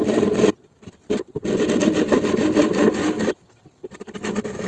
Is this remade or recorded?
remade